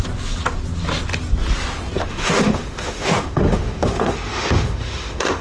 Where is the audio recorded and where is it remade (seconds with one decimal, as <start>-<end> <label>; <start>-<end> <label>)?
0.0-2.0 recorded; 2.0-5.4 remade